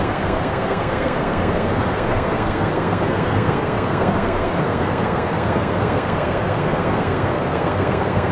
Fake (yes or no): yes